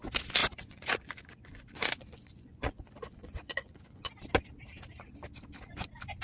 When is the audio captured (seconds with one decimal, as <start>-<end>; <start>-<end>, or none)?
0.0-0.4; 4.1-6.2